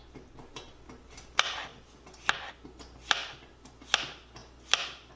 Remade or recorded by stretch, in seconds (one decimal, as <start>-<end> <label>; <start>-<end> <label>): 0.0-5.2 recorded